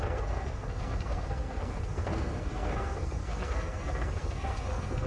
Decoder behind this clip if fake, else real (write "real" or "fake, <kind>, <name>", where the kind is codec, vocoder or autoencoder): fake, codec, SNAC